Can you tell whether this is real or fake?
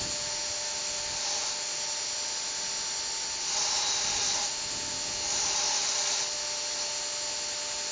real